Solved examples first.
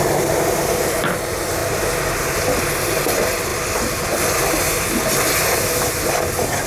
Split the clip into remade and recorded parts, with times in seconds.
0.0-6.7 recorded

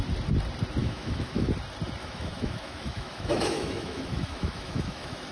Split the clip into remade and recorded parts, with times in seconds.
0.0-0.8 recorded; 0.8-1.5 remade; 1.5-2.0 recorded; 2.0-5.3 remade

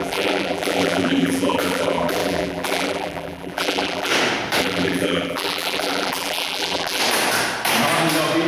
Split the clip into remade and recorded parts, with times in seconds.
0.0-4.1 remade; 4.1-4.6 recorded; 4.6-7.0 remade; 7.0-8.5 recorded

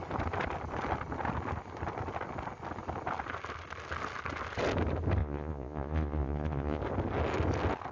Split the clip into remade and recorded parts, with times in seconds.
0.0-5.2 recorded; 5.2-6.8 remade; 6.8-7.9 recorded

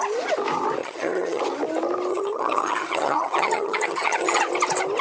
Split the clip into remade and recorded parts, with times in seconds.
0.0-0.8 recorded; 0.8-1.4 remade; 1.4-2.1 recorded; 2.1-4.4 remade; 4.4-5.0 recorded